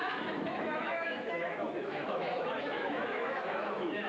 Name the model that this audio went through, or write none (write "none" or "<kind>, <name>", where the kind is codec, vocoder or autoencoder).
autoencoder, DAC-VAE